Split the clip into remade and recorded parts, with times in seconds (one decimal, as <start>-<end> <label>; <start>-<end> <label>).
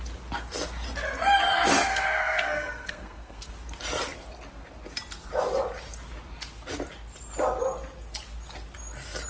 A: 0.0-1.9 recorded; 1.9-3.5 remade; 3.5-9.3 recorded